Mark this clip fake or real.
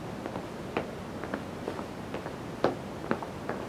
real